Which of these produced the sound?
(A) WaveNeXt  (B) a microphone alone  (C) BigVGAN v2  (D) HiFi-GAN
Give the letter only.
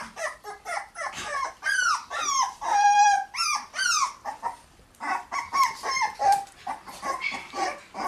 C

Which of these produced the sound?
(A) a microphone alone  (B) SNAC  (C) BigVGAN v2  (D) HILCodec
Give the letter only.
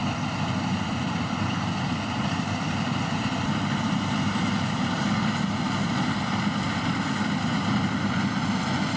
C